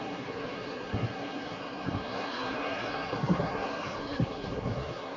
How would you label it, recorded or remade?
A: remade